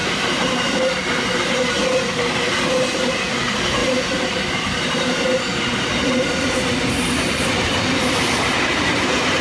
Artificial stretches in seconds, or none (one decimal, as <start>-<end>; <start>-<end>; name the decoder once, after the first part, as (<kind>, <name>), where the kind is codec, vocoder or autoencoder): 0.0-1.3 (vocoder, BigVGAN v2); 3.8-5.2